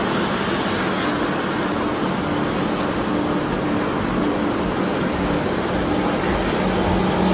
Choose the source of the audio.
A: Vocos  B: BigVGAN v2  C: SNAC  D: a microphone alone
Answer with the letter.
D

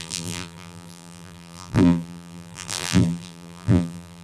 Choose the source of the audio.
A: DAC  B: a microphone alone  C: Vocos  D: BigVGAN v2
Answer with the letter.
D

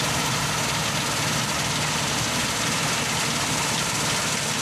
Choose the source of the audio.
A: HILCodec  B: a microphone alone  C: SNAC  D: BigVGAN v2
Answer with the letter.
B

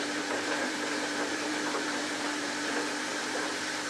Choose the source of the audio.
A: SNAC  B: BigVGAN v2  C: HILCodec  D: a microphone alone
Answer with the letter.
B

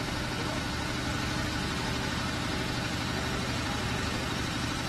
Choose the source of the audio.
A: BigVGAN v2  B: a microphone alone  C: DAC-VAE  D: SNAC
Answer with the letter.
B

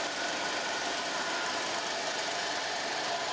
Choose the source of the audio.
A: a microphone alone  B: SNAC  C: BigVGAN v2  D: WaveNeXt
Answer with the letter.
C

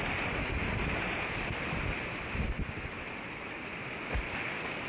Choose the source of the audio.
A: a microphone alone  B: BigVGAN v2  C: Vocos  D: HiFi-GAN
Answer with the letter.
A